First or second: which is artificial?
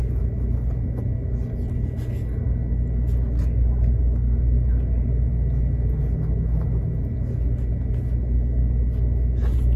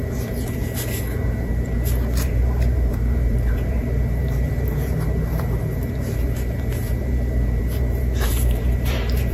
second